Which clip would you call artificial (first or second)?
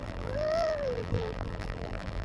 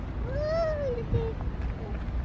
first